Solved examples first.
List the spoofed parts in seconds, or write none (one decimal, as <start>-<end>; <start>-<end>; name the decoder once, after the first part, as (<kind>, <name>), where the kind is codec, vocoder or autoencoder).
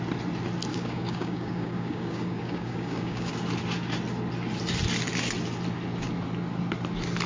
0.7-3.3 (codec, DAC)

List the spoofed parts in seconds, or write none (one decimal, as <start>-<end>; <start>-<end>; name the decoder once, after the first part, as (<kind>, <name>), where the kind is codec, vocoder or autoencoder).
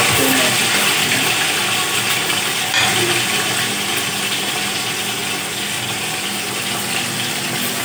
none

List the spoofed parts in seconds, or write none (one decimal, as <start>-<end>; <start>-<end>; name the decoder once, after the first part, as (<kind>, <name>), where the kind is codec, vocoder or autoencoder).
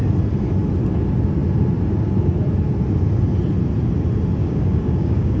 4.4-5.4 (codec, DAC)